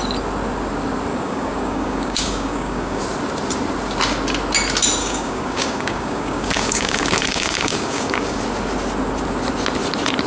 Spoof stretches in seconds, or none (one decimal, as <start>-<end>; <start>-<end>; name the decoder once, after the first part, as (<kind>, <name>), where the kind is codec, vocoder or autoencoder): 1.1-3.0 (codec, DAC); 5.0-8.4